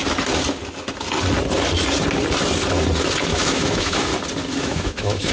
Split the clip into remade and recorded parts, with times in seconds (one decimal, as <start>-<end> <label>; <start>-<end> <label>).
0.0-3.2 recorded; 3.2-4.1 remade; 4.1-4.6 recorded; 4.6-5.3 remade